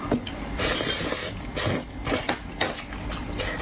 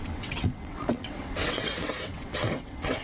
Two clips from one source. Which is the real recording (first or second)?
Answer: first